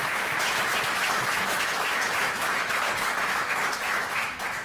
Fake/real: fake